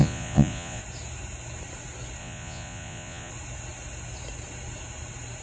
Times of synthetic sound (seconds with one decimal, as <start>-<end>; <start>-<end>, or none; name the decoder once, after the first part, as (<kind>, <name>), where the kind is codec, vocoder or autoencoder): 0.0-0.8 (vocoder, Vocos); 2.2-3.3